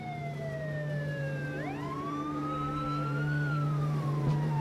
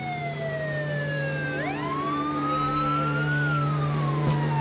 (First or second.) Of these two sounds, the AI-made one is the first